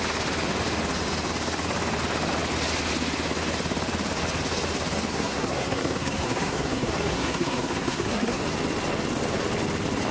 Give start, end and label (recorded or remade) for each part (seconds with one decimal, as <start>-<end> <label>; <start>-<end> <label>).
0.0-5.1 recorded; 5.1-8.4 remade; 8.4-10.1 recorded